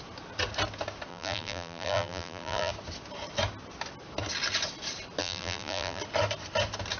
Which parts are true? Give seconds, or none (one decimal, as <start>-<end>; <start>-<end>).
0.0-1.1; 2.7-5.2; 6.0-7.0